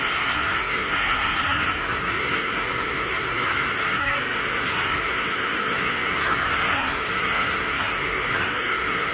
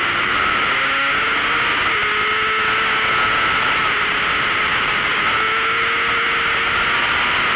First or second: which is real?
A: second